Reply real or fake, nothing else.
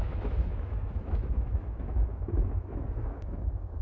fake